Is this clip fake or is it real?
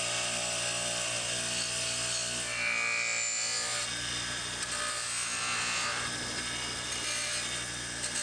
real